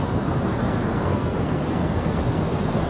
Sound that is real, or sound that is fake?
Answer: fake